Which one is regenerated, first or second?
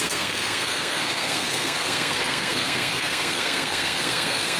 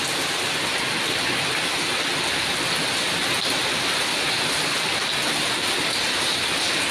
first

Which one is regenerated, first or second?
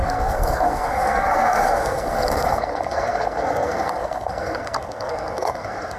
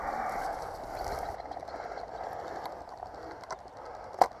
first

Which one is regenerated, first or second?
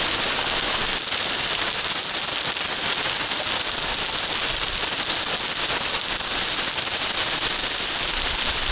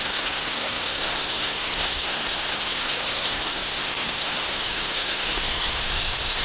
second